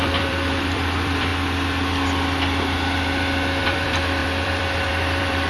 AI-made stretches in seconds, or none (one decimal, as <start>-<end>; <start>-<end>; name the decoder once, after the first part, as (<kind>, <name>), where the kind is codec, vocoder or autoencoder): 0.0-1.3 (vocoder, BigVGAN v2); 3.6-5.5